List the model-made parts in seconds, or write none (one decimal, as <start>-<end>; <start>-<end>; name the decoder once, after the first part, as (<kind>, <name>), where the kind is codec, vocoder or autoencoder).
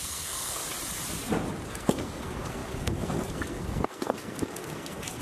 0.0-0.6 (codec, SNAC); 1.7-5.2